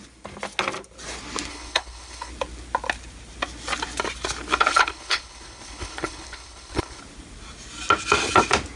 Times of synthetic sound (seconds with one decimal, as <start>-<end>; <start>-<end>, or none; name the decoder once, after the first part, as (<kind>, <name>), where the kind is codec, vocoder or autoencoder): 1.5-2.3 (codec, HILCodec); 4.7-7.0